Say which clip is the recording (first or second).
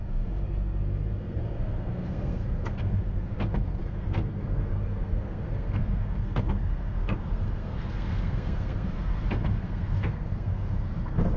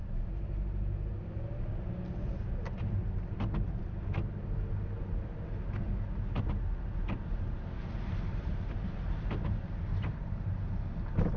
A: second